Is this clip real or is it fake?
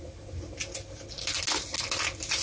real